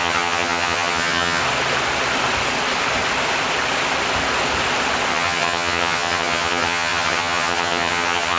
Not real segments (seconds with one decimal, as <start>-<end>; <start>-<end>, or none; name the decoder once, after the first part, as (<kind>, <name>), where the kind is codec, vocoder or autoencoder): 0.0-1.4 (vocoder, HiFi-GAN); 5.1-8.4